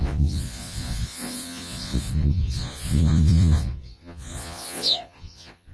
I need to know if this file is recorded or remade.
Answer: remade